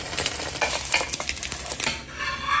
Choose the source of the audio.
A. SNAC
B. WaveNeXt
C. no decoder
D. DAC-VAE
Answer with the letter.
C